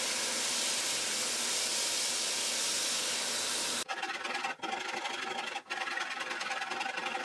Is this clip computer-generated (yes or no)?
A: no